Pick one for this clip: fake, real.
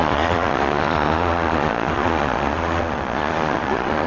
fake